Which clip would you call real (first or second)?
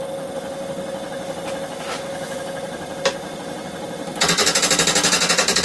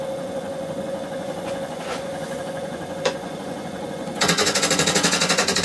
first